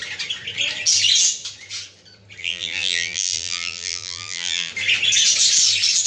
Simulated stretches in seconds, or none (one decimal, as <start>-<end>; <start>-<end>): 2.4-4.7